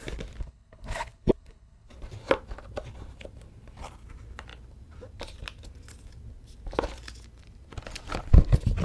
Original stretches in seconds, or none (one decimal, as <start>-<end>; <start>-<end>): 0.0-0.4; 1.9-8.8

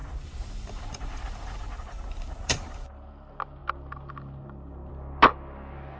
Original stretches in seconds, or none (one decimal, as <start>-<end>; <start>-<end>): 3.1-6.0